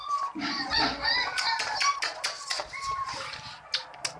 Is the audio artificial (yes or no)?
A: no